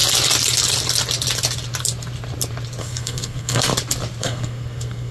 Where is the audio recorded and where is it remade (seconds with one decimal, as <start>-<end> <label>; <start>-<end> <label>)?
0.0-2.8 recorded; 2.8-3.7 remade; 3.7-4.2 recorded; 4.2-5.1 remade